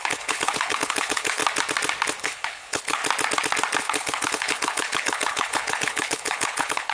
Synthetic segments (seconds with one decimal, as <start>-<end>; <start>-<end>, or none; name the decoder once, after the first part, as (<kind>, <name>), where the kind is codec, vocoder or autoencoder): 0.0-1.4 (codec, HILCodec); 2.2-3.0; 3.8-6.9